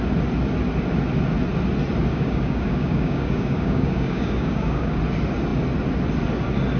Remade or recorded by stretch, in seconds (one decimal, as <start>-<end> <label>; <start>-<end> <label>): 0.0-2.1 recorded; 2.1-5.0 remade; 5.0-6.8 recorded